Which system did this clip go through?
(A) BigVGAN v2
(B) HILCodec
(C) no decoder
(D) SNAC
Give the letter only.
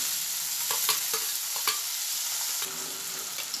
C